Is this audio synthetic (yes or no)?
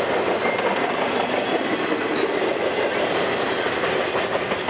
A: no